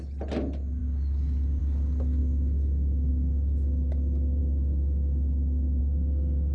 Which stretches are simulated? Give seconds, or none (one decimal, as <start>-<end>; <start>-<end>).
none

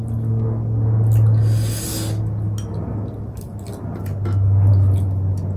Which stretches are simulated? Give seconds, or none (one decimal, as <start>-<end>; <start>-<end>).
none

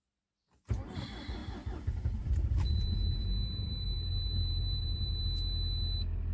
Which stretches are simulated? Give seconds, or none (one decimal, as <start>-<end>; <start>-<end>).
1.4-5.2

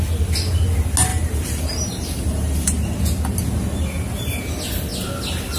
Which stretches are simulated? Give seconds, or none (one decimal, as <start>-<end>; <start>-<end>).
1.1-3.0

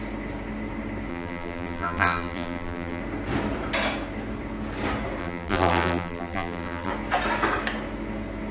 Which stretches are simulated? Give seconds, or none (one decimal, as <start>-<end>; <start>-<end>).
1.1-3.0; 5.2-6.9